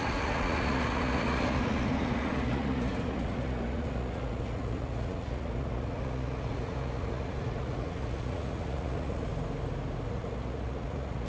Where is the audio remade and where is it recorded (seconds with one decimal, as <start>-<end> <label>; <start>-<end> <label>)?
0.0-9.3 remade; 9.3-10.1 recorded; 10.1-11.3 remade